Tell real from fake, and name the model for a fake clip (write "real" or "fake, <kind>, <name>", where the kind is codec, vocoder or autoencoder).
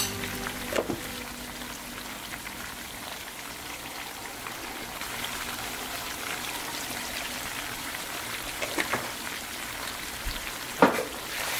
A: fake, vocoder, BigVGAN v2